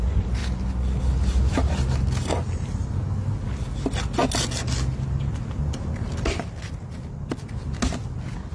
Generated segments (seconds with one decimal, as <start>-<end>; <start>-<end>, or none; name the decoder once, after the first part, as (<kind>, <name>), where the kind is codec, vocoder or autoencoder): none